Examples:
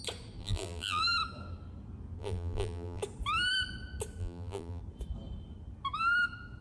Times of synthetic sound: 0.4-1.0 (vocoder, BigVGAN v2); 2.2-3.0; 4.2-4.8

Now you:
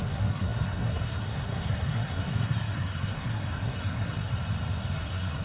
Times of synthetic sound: 0.0-4.3 (codec, SNAC); 5.0-5.4

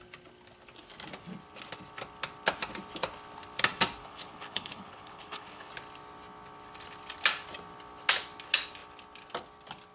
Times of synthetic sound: 4.0-5.7 (codec, HILCodec)

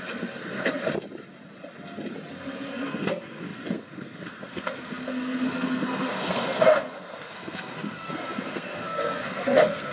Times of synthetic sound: 0.0-0.8 (codec, SNAC); 2.3-9.9